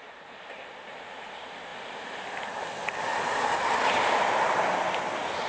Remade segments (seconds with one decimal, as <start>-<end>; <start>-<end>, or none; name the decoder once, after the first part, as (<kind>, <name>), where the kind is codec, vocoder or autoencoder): none